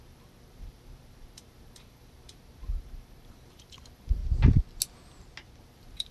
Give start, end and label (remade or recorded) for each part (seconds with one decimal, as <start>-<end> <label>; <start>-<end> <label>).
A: 0.0-4.2 remade; 4.2-5.6 recorded; 5.6-6.1 remade